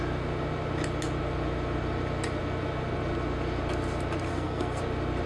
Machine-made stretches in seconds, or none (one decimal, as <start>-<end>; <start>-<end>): 4.3-4.8